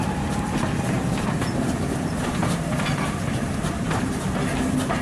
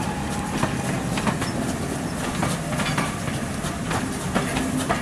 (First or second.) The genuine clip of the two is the second